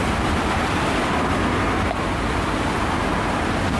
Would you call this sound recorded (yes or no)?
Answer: yes